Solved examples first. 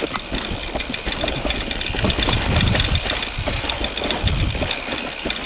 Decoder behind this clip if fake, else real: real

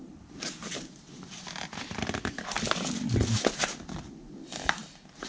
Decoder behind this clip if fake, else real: real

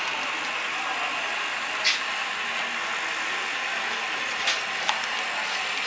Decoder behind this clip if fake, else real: real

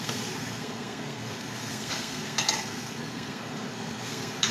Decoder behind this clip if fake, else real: fake, codec, SNAC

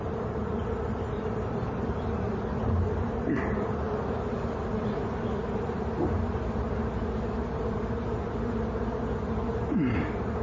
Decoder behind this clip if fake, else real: real